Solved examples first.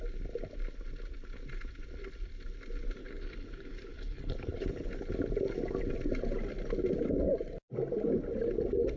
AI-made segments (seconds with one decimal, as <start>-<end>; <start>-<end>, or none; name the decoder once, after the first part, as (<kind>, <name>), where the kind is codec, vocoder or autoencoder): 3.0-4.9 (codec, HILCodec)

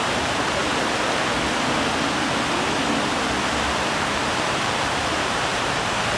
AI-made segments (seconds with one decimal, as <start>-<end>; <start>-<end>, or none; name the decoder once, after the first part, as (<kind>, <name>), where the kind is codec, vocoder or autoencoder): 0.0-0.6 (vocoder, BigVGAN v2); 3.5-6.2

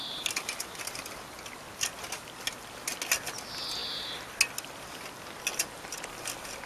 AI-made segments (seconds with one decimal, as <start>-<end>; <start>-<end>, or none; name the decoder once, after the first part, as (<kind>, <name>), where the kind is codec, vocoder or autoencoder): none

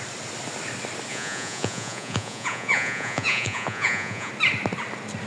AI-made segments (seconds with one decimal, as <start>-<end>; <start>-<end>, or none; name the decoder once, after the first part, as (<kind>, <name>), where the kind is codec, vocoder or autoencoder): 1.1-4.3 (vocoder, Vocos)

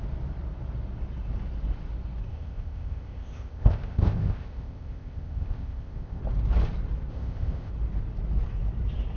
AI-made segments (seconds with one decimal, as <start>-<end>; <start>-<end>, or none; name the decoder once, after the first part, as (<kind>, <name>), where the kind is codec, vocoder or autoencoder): 2.3-6.2 (codec, ZipCodec); 7.1-7.7

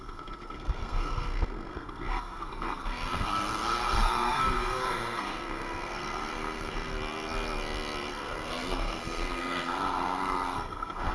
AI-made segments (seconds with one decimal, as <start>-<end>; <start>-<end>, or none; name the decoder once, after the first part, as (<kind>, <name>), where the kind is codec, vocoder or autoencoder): 0.0-6.9 (codec, SNAC); 8.1-11.1

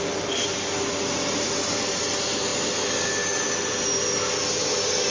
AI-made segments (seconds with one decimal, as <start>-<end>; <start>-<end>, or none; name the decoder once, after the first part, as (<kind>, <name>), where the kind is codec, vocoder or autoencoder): none